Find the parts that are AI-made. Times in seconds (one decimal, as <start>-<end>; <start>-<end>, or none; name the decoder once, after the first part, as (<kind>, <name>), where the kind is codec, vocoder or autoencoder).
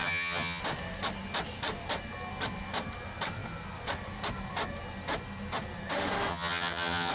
0.0-0.6 (vocoder, HiFi-GAN); 6.3-7.1